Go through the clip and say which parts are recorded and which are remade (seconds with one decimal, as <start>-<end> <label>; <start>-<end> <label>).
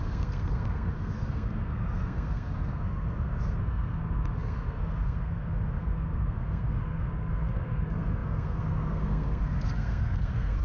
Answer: 0.0-10.6 remade